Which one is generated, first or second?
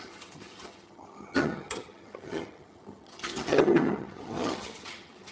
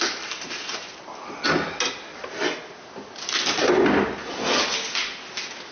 first